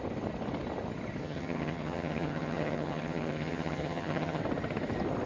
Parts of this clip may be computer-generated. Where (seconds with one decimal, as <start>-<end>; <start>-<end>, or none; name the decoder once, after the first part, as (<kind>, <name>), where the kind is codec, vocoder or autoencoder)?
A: 1.2-4.4 (vocoder, HiFi-GAN)